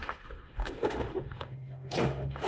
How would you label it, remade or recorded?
remade